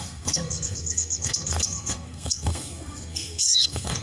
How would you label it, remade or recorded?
remade